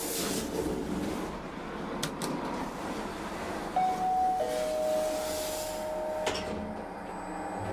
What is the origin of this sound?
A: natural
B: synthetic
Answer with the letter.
A